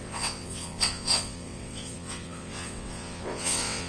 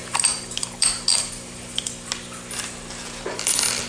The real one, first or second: second